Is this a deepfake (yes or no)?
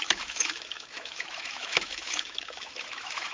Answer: yes